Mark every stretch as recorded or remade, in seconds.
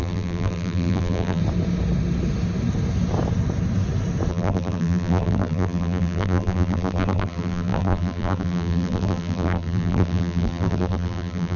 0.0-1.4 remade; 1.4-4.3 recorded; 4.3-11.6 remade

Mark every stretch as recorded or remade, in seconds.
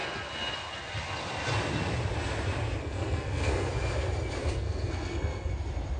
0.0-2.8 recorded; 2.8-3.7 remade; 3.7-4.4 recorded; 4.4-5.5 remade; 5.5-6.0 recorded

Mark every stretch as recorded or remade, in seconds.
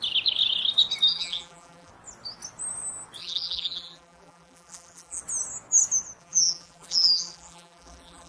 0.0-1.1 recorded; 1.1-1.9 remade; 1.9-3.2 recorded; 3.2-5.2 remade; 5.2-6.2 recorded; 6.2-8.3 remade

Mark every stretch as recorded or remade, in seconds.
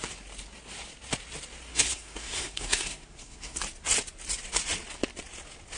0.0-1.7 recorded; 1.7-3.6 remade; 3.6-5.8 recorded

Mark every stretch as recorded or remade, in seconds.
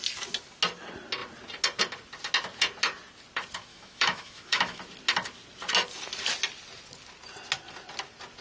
0.0-3.7 recorded; 3.7-4.8 remade; 4.8-8.4 recorded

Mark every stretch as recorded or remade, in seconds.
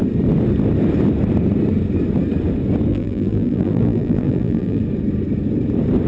0.0-2.9 recorded; 2.9-4.8 remade; 4.8-6.1 recorded